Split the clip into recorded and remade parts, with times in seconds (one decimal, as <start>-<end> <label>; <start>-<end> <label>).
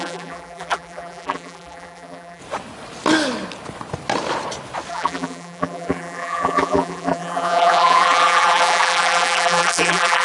0.0-2.4 remade; 2.4-4.9 recorded; 4.9-10.2 remade